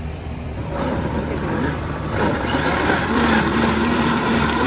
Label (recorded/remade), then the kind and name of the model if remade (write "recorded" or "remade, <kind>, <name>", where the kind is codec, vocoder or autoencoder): remade, vocoder, BigVGAN v2